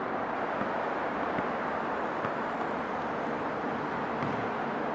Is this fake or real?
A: real